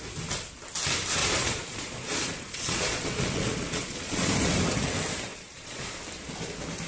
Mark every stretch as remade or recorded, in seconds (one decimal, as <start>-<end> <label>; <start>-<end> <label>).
0.0-1.2 recorded; 1.2-4.3 remade; 4.3-5.3 recorded; 5.3-6.0 remade; 6.0-6.9 recorded